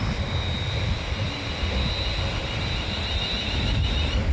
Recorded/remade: recorded